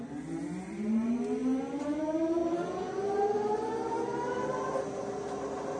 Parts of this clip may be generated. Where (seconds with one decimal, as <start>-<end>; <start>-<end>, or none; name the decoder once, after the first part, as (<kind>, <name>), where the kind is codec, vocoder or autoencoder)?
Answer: none